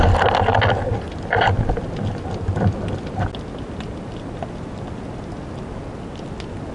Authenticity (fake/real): real